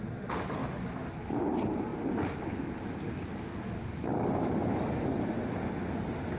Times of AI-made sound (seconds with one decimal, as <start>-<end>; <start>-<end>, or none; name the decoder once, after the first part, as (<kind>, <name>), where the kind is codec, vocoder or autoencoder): none